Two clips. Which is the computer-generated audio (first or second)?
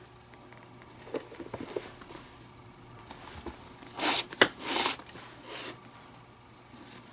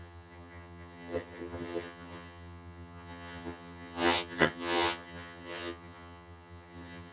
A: second